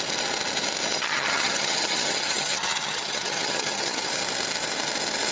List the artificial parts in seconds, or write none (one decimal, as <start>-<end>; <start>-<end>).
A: 0.9-4.1